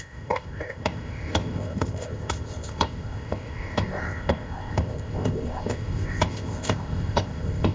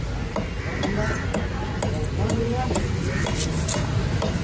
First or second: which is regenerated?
first